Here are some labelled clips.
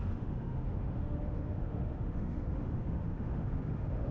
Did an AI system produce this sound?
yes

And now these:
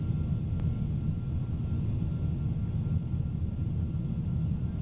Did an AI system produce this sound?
no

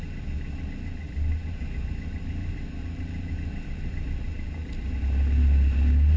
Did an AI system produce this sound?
no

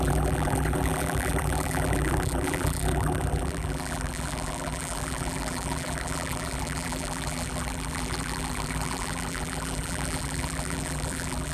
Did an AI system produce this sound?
yes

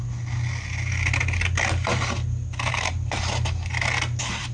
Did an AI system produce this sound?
no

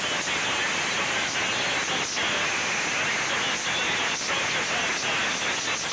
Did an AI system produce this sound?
no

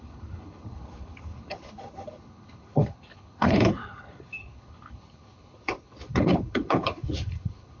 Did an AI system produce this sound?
yes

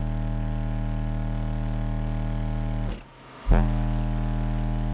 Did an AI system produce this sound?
no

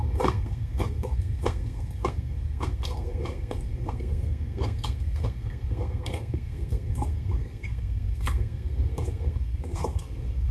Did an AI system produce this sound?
yes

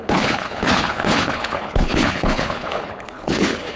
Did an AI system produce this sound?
yes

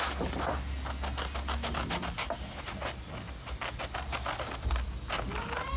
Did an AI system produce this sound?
no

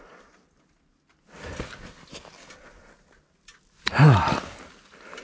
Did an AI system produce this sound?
no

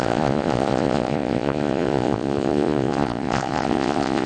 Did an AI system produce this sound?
yes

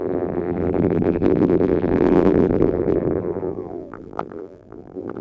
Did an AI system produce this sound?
yes